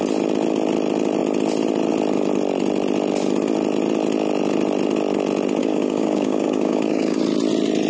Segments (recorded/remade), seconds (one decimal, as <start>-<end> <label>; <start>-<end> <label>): 0.0-5.6 recorded; 5.6-7.2 remade; 7.2-7.9 recorded